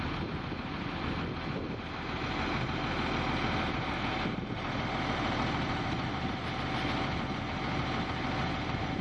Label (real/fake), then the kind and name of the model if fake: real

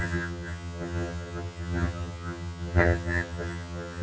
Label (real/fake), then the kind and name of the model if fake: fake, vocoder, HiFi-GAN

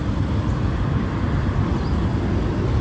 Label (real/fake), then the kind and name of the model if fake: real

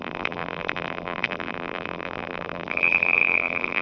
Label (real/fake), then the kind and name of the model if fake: fake, vocoder, BigVGAN v2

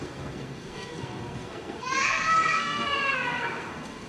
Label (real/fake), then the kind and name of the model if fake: fake, codec, SNAC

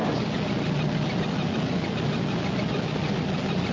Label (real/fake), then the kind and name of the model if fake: real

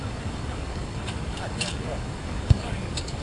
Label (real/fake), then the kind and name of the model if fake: fake, codec, DAC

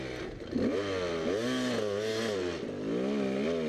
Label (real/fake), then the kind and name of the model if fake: real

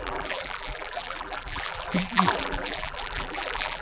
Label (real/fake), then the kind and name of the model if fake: fake, vocoder, BigVGAN v2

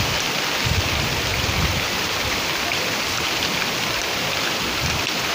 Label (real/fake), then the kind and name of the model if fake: fake, vocoder, BigVGAN v2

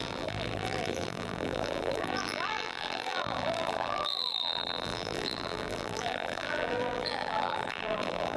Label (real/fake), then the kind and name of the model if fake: fake, vocoder, BigVGAN v2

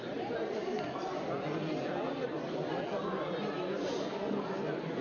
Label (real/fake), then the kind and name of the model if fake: real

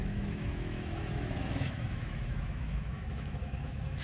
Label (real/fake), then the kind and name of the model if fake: fake, autoencoder, DAC-VAE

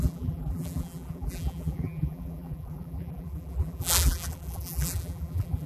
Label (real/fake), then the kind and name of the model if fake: fake, vocoder, BigVGAN v2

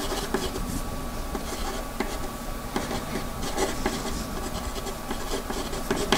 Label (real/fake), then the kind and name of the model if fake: real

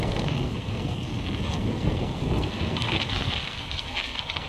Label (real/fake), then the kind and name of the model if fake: fake, codec, SNAC